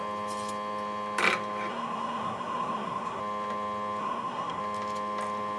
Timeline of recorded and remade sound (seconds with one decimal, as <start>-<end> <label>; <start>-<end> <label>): 0.0-1.7 recorded; 1.7-3.2 remade; 3.2-4.0 recorded; 4.0-4.6 remade; 4.6-5.6 recorded